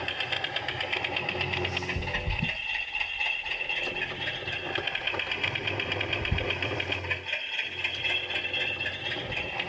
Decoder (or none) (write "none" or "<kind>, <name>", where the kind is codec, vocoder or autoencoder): none